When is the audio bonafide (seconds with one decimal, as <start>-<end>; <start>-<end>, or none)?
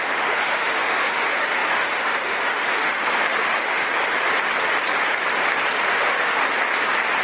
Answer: 3.9-5.9; 6.4-7.2